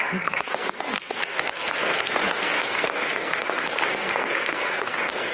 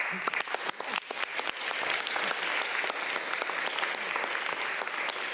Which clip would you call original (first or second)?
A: second